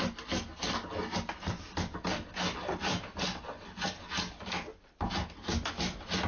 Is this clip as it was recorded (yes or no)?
yes